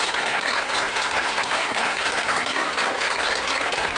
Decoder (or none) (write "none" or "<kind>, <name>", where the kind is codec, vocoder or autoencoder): codec, SNAC